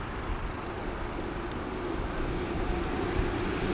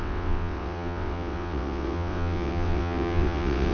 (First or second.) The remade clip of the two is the second